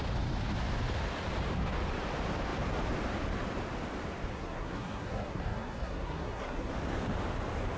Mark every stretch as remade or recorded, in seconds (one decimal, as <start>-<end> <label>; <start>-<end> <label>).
0.0-4.3 recorded; 4.3-6.7 remade; 6.7-7.8 recorded